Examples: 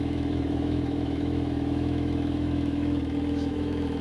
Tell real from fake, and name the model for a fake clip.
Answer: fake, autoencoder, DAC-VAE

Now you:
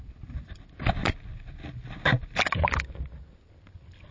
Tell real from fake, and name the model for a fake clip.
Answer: real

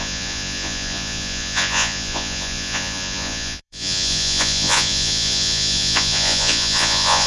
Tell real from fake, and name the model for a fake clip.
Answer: fake, vocoder, Vocos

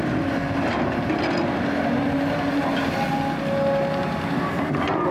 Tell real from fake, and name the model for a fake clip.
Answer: real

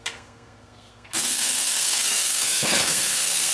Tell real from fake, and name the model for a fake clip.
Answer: fake, codec, SNAC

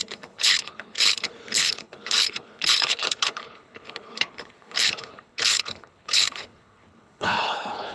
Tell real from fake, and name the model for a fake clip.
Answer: fake, codec, HILCodec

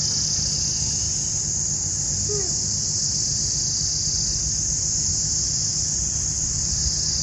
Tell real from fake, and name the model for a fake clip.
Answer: real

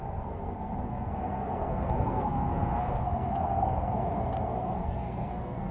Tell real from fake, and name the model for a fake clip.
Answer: fake, codec, SNAC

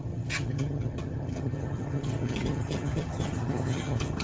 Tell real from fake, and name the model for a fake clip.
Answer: fake, vocoder, HiFi-GAN